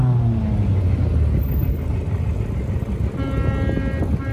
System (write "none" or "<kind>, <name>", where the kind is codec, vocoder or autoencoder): none